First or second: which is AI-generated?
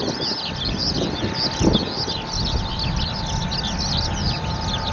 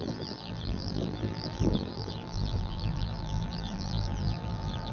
second